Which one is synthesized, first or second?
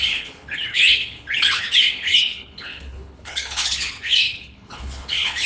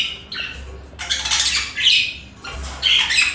first